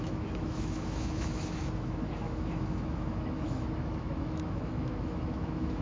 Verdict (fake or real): fake